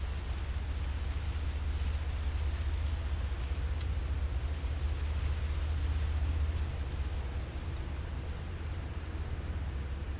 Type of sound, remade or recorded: recorded